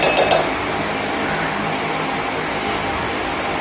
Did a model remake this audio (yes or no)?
no